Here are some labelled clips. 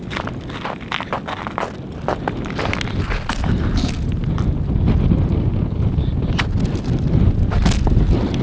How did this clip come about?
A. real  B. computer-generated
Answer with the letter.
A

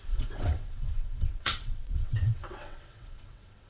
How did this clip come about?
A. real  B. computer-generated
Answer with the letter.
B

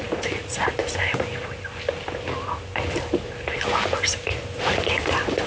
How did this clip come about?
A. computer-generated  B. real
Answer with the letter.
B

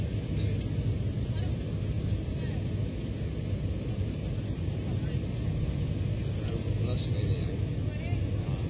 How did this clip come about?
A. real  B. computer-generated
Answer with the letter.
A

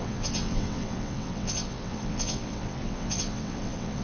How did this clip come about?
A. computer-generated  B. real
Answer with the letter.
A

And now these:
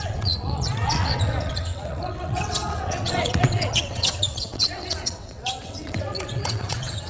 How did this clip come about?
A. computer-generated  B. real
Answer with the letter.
A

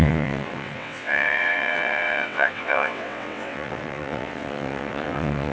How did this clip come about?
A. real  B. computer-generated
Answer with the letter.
B